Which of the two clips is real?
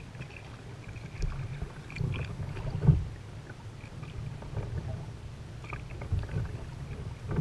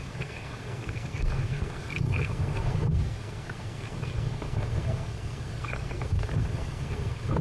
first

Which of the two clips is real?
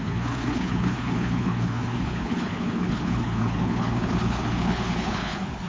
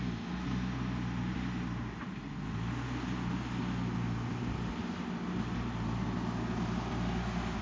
second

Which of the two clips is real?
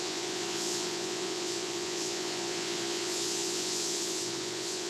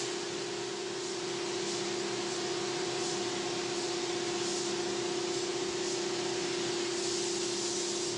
second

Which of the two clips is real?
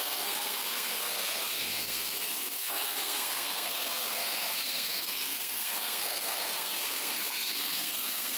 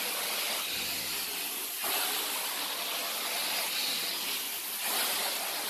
second